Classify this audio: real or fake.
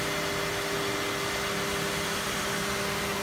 real